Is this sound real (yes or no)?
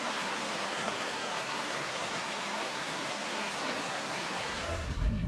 no